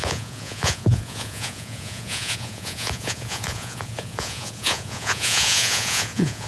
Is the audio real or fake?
fake